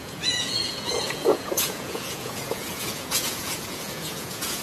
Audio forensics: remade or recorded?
remade